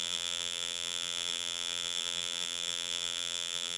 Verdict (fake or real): fake